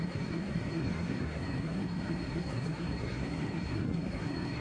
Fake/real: fake